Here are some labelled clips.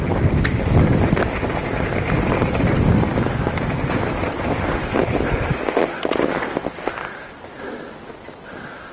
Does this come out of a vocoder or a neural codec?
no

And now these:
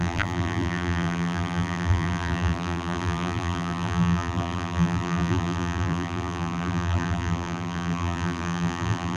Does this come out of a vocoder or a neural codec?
yes